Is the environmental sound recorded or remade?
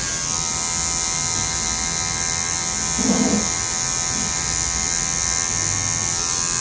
recorded